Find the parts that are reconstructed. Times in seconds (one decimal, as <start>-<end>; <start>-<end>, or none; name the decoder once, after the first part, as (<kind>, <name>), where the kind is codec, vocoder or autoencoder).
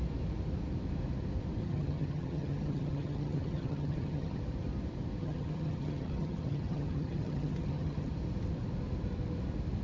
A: 1.6-4.4 (vocoder, HiFi-GAN); 5.2-8.1